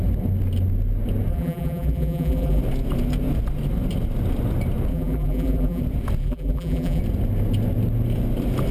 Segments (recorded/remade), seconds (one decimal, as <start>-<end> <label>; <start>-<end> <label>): 0.0-1.3 recorded; 1.3-2.6 remade; 2.6-4.9 recorded; 4.9-5.8 remade; 5.8-6.2 recorded; 6.2-7.0 remade; 7.0-8.7 recorded